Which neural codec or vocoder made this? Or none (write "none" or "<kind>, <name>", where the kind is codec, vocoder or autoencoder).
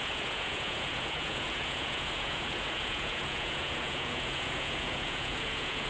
vocoder, Vocos